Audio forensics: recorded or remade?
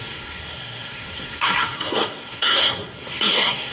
remade